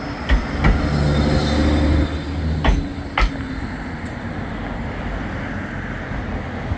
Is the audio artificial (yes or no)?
no